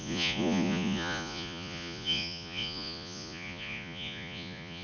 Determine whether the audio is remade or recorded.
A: remade